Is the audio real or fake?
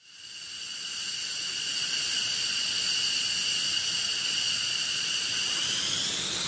real